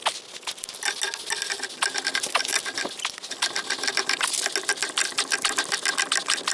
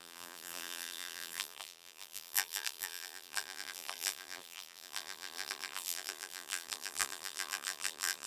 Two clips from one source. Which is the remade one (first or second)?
second